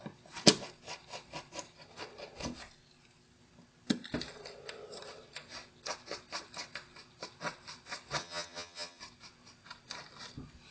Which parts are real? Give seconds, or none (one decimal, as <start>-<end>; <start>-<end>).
0.0-8.2; 9.0-10.7